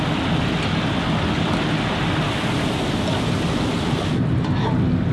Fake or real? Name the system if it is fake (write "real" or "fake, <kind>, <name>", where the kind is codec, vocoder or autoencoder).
real